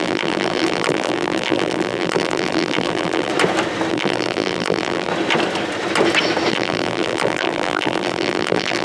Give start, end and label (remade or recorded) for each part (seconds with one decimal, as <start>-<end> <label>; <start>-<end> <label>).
0.0-3.3 remade; 3.3-3.9 recorded; 3.9-5.1 remade; 5.1-6.5 recorded; 6.5-8.8 remade